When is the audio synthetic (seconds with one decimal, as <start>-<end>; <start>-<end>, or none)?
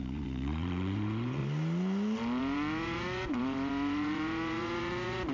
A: 0.0-1.4; 2.4-5.3